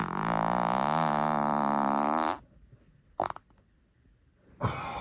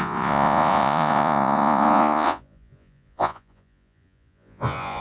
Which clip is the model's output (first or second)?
second